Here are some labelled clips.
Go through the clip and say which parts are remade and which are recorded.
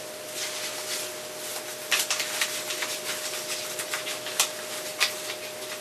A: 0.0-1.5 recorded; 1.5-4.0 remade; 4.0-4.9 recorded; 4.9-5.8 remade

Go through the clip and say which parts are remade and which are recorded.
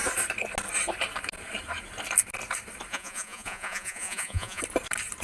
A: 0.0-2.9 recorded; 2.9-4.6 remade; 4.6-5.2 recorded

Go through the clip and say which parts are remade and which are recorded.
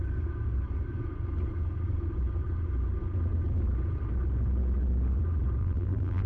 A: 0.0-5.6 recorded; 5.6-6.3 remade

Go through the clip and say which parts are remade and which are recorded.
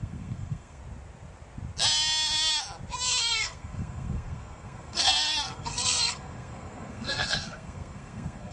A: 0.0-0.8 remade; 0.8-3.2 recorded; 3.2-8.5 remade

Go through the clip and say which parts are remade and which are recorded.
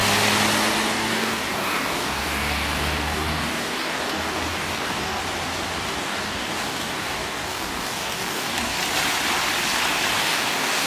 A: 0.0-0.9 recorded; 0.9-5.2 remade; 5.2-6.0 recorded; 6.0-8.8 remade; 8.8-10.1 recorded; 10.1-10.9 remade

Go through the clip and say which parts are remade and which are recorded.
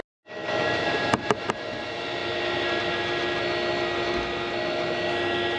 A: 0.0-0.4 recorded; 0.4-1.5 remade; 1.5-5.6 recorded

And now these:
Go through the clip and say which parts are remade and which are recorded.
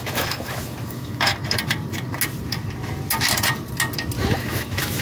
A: 0.0-1.4 remade; 1.4-4.4 recorded; 4.4-5.0 remade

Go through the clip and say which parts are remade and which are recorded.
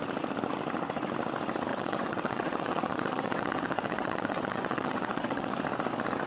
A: 0.0-1.7 recorded; 1.7-5.5 remade; 5.5-6.3 recorded